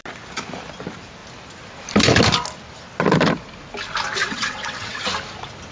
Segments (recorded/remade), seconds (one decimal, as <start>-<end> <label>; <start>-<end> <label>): 0.0-4.2 recorded; 4.2-5.0 remade; 5.0-5.7 recorded